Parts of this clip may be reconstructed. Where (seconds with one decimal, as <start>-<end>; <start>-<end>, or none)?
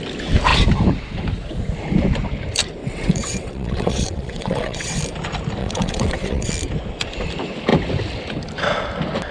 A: 2.8-5.0; 5.6-6.5